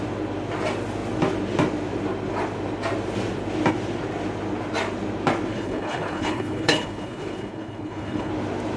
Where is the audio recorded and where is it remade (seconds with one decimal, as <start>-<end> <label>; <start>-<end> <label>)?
0.0-5.5 recorded; 5.5-8.3 remade; 8.3-8.8 recorded